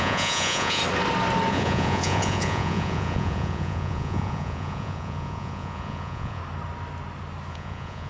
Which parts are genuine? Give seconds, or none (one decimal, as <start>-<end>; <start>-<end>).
0.8-1.5; 6.4-7.5